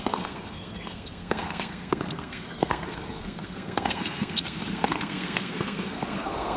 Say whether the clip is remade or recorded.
remade